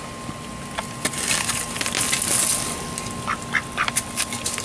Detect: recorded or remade recorded